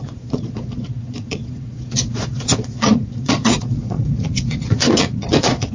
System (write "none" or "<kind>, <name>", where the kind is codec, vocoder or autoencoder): vocoder, Vocos